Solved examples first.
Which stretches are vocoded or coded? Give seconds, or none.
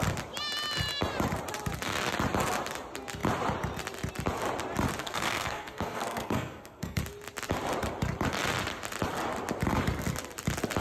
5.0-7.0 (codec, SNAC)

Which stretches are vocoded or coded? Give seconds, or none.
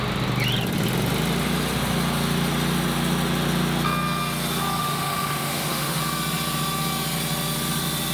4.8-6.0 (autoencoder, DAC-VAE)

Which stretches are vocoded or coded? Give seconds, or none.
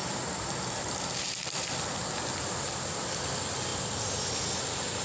none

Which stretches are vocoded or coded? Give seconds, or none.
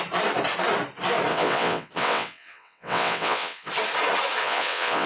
1.3-3.7 (vocoder, WaveNeXt); 4.4-5.1